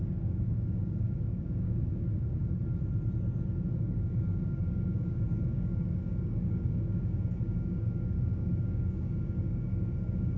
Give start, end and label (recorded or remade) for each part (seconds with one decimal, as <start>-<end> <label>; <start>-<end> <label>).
0.0-2.6 remade; 2.6-3.5 recorded; 3.5-10.4 remade